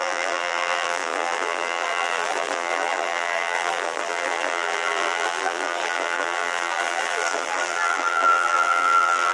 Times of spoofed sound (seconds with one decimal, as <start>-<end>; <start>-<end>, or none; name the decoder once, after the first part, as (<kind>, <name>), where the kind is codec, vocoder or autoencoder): 0.0-9.3 (vocoder, BigVGAN v2)